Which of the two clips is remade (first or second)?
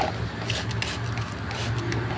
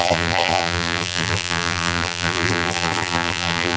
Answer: second